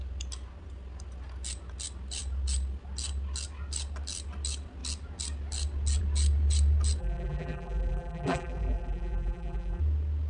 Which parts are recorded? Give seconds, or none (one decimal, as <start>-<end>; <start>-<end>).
0.0-7.0; 9.8-10.3